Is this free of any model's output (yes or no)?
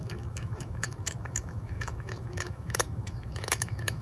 no